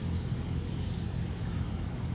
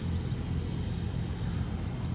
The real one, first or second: second